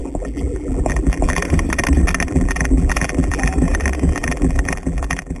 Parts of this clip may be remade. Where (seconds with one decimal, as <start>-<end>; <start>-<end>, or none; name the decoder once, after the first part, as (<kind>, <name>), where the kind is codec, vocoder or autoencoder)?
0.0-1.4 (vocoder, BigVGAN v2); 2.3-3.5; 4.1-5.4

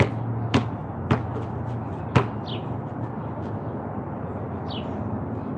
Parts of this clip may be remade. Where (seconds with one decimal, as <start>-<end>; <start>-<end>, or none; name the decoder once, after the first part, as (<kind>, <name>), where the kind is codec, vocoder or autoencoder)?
none

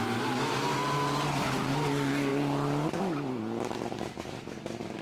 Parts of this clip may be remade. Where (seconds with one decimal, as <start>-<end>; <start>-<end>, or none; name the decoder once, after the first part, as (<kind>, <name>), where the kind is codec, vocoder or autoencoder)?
2.3-3.0 (vocoder, BigVGAN v2)

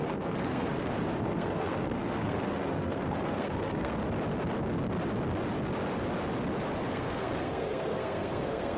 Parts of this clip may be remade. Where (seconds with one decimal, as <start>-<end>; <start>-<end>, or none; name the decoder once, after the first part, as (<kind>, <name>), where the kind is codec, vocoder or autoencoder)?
0.0-4.0 (codec, SNAC); 6.9-8.8